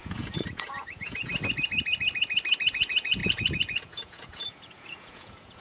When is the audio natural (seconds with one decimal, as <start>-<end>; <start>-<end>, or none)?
1.3-2.7